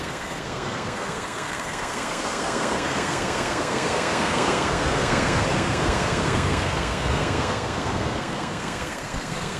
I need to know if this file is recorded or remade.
remade